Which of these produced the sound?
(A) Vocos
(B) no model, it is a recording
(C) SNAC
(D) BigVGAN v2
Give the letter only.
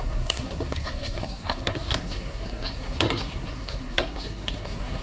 C